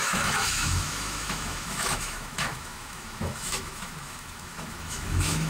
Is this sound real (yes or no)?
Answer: no